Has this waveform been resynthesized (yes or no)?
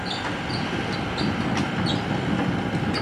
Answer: no